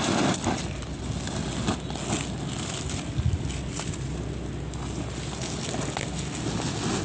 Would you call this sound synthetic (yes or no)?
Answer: no